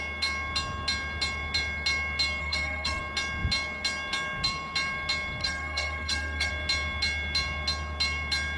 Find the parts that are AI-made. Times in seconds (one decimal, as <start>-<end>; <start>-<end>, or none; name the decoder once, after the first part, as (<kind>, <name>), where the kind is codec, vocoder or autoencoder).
2.4-3.0 (codec, SNAC); 5.4-6.5